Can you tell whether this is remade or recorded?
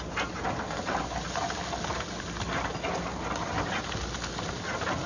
recorded